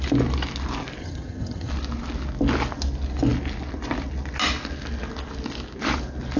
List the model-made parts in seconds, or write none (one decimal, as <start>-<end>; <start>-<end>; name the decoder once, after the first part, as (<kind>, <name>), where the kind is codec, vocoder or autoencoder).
1.0-1.7 (vocoder, HiFi-GAN)